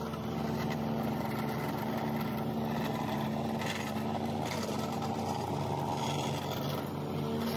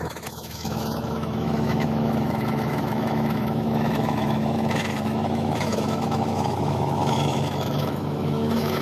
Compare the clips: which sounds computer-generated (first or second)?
second